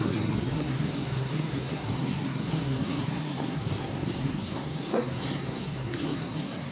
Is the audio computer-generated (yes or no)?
yes